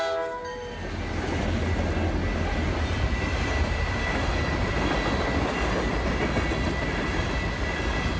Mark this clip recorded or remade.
recorded